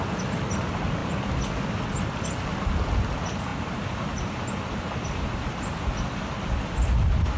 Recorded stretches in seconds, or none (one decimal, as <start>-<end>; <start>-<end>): 0.0-7.4